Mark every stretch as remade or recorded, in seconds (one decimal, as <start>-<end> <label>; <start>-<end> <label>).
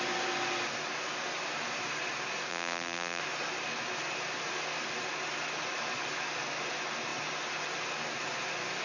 0.0-2.5 recorded; 2.5-3.2 remade; 3.2-8.8 recorded